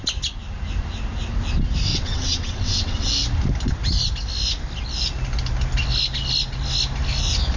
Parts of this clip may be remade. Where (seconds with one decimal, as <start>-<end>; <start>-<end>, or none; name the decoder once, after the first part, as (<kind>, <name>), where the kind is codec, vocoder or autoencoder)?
1.9-3.1 (vocoder, WaveNeXt)